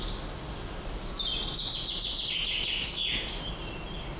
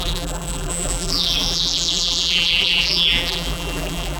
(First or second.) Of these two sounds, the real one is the first